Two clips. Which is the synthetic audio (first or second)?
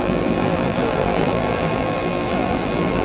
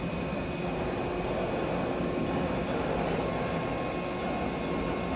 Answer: first